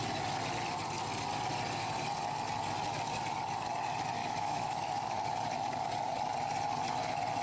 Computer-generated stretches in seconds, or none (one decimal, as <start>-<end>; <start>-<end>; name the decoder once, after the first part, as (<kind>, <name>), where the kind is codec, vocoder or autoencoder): 4.2-5.2 (autoencoder, DAC-VAE)